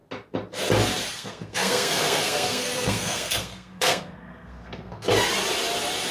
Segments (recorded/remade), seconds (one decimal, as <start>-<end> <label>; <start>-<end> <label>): 0.0-1.1 recorded; 1.1-5.1 remade; 5.1-6.1 recorded